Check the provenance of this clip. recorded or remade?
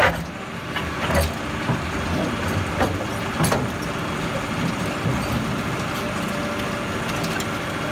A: recorded